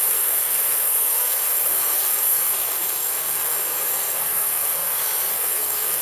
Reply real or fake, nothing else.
fake